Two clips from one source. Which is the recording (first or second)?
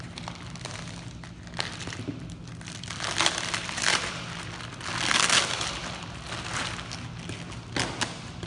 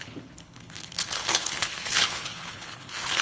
first